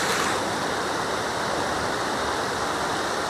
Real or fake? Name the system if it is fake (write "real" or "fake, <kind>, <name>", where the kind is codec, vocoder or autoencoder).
real